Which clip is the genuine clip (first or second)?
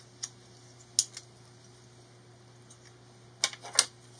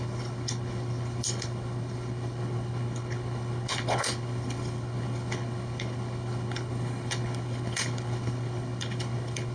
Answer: first